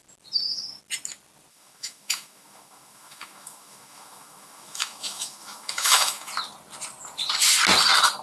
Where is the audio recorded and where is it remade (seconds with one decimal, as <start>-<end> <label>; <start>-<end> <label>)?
0.0-1.5 recorded; 1.5-6.3 remade; 6.3-8.2 recorded